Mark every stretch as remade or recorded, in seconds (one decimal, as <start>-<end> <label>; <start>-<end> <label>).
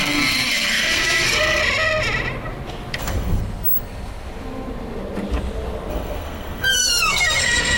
0.0-1.6 remade; 1.6-3.0 recorded; 3.0-3.4 remade; 3.4-5.9 recorded; 5.9-7.8 remade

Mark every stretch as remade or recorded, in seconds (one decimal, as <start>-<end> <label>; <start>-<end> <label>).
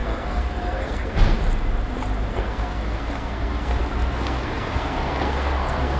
0.0-1.4 remade; 1.4-2.3 recorded; 2.3-6.0 remade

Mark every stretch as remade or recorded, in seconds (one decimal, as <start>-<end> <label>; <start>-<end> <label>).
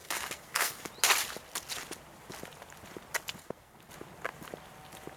0.0-0.9 remade; 0.9-3.4 recorded; 3.4-3.9 remade; 3.9-5.2 recorded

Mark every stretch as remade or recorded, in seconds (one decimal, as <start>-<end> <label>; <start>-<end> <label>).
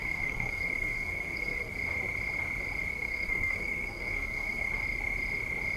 0.0-1.7 remade; 1.7-2.9 recorded; 2.9-4.7 remade; 4.7-5.8 recorded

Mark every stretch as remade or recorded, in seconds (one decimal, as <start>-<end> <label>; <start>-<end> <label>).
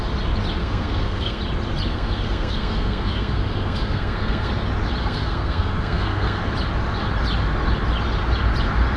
0.0-0.6 recorded; 0.6-1.4 remade; 1.4-1.9 recorded; 1.9-4.5 remade; 4.5-5.0 recorded; 5.0-6.4 remade; 6.4-9.0 recorded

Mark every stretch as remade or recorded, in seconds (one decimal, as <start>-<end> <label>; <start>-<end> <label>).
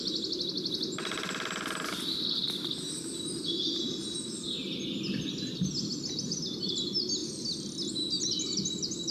0.0-9.1 recorded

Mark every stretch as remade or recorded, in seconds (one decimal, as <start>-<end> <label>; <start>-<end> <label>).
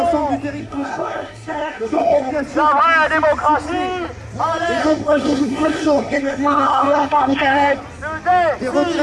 0.0-0.6 recorded; 0.6-2.3 remade; 2.3-4.8 recorded; 4.8-7.8 remade; 7.8-9.0 recorded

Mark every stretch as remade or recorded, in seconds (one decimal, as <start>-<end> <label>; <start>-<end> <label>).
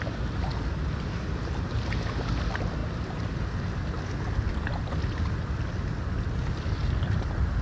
0.0-7.6 recorded